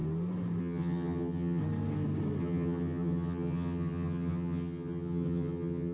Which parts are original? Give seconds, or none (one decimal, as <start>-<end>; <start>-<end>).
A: 0.0-0.6; 1.6-2.4